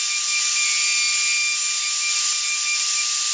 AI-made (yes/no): no